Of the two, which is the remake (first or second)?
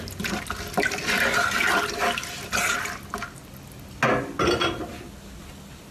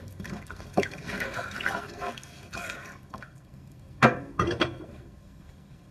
second